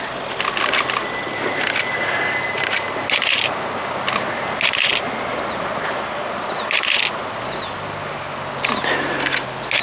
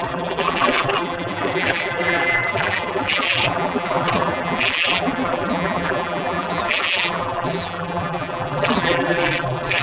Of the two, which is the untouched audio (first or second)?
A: first